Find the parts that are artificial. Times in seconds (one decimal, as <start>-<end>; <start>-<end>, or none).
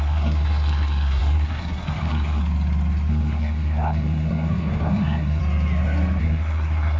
0.0-2.4; 3.1-5.4; 6.2-7.0